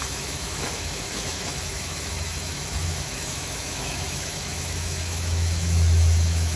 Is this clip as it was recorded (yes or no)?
no